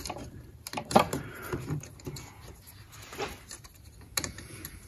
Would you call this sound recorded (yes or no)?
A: no